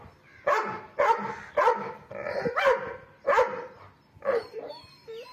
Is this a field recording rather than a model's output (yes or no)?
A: yes